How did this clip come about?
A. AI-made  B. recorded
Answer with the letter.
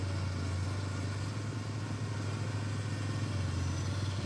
B